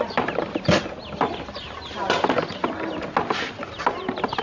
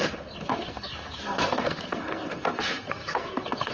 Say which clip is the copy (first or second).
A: second